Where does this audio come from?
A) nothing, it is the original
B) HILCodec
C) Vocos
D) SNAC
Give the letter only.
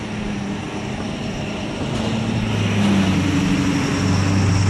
A